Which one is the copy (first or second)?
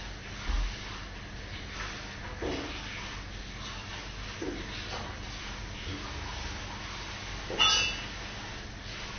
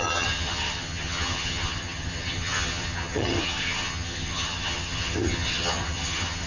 second